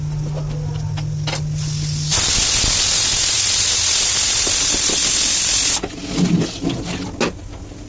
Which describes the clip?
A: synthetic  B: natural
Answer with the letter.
B